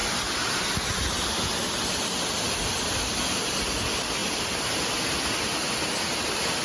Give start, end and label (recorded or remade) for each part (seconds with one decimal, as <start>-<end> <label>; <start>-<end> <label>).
0.0-6.6 recorded